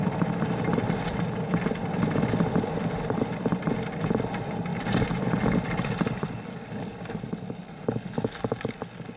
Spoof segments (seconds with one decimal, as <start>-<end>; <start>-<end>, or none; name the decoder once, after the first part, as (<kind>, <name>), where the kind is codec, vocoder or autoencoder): 4.7-6.8 (vocoder, BigVGAN v2)